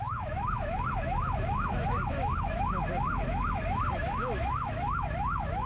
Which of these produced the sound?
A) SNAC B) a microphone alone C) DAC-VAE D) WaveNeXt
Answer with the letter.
C